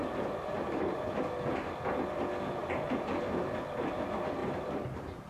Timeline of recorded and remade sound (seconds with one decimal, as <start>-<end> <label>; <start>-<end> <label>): 0.0-1.1 remade; 1.1-2.6 recorded; 2.6-3.3 remade; 3.3-4.4 recorded; 4.4-5.3 remade